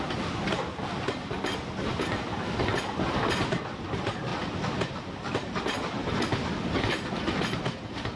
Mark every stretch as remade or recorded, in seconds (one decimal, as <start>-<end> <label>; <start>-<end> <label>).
0.0-8.2 recorded